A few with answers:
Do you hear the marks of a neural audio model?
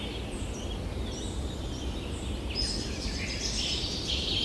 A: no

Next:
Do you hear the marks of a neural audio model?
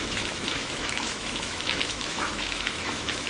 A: yes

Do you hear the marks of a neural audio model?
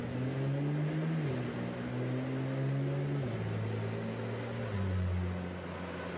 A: no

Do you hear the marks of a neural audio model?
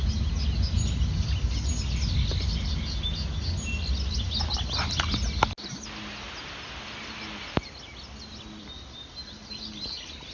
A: no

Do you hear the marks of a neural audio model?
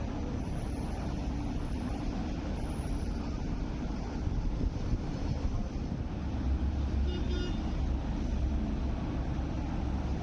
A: no